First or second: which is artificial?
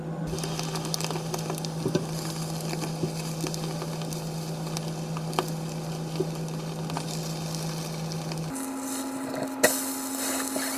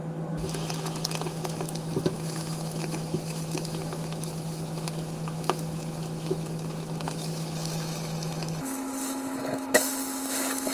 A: second